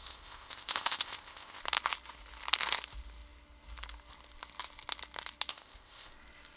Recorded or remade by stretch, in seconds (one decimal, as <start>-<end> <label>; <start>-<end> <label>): 0.0-1.6 remade; 1.6-5.5 recorded; 5.5-6.1 remade; 6.1-6.6 recorded